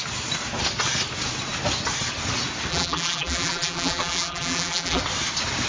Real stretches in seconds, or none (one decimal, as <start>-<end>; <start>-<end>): 0.0-2.7; 5.0-5.7